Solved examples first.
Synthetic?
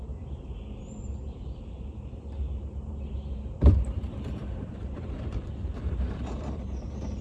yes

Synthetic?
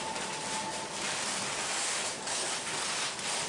no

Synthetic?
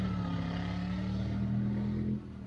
no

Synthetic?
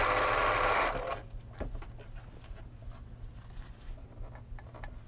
no